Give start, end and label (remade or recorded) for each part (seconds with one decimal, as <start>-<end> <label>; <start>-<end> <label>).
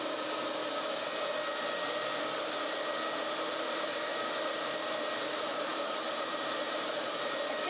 0.0-0.6 remade; 0.6-3.3 recorded; 3.3-7.7 remade